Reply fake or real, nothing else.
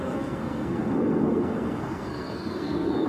fake